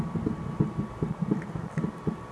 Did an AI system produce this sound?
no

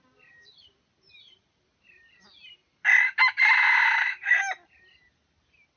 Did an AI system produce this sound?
no